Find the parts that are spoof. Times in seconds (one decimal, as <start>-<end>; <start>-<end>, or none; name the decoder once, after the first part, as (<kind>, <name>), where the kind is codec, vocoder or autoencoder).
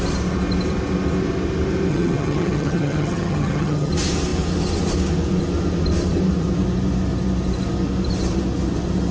1.9-3.9 (vocoder, HiFi-GAN)